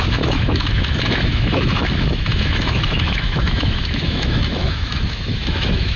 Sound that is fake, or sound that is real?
fake